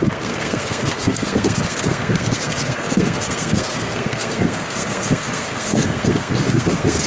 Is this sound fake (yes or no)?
yes